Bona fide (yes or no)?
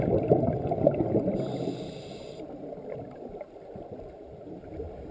yes